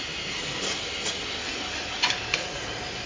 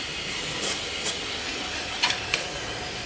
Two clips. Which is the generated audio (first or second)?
second